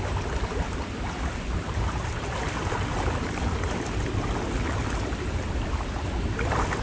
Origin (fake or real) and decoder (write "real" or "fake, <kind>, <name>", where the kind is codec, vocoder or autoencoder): real